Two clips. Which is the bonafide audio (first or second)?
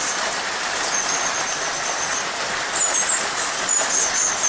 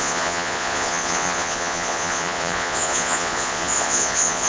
first